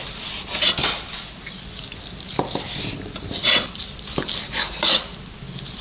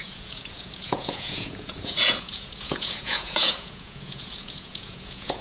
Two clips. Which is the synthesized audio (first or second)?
second